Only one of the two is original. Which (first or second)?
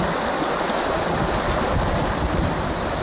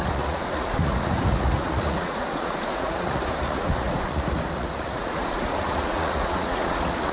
first